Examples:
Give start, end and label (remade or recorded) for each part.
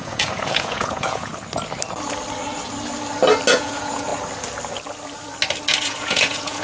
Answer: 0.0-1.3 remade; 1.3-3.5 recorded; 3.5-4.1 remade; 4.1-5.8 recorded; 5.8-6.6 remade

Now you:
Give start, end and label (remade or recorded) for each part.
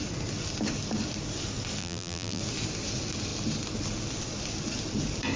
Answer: 0.0-1.8 recorded; 1.8-2.4 remade; 2.4-5.4 recorded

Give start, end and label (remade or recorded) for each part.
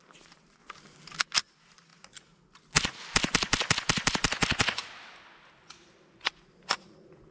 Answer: 0.0-7.3 recorded